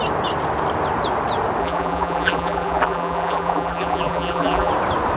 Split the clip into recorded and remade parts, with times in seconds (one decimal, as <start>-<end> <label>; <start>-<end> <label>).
0.0-1.6 recorded; 1.6-4.7 remade; 4.7-5.2 recorded